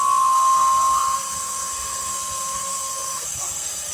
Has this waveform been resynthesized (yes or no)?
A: yes